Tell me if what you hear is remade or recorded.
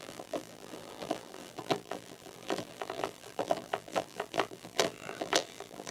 remade